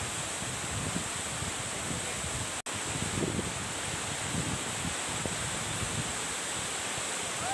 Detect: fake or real real